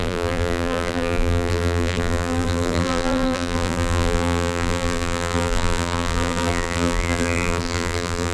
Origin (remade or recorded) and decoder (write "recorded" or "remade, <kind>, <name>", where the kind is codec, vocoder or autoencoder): remade, vocoder, BigVGAN v2